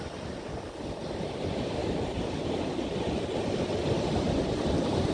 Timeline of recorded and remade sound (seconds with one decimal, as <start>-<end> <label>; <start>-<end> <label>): 0.0-5.1 recorded